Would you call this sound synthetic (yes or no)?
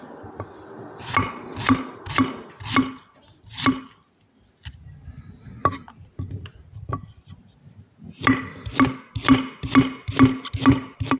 no